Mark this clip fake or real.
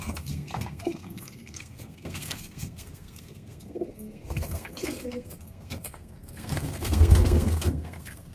fake